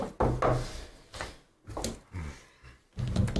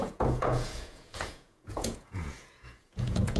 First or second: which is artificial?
second